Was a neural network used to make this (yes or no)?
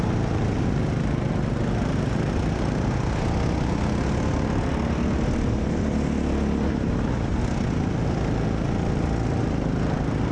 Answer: no